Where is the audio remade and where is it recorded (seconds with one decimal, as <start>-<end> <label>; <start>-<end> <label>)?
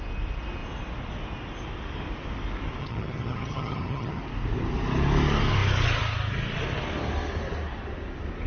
0.0-2.8 recorded; 2.8-4.2 remade; 4.2-8.5 recorded